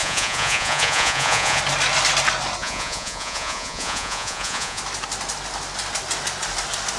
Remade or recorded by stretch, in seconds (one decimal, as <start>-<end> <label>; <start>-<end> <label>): 0.0-1.6 remade; 1.6-2.6 recorded; 2.6-4.8 remade; 4.8-7.0 recorded